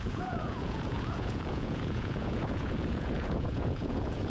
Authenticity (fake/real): fake